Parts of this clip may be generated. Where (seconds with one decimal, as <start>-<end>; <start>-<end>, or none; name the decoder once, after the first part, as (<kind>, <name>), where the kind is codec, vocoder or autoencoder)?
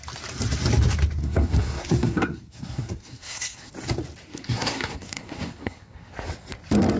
1.2-3.7 (codec, SNAC); 4.3-6.1